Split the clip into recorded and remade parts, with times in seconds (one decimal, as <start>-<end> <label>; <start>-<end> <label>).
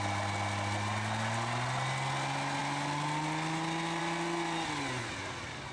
0.0-5.7 recorded